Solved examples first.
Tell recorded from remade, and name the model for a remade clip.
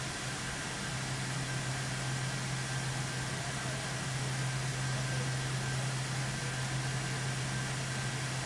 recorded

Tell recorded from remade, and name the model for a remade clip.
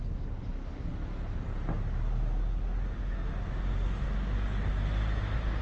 recorded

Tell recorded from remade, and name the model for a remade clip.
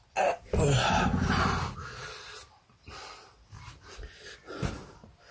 recorded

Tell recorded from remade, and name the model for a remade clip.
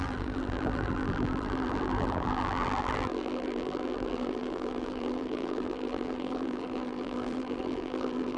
remade, vocoder, BigVGAN v2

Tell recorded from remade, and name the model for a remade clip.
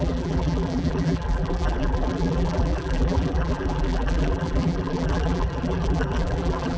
remade, vocoder, BigVGAN v2